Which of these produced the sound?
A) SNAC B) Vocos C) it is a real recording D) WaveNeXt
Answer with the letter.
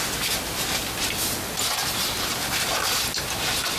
C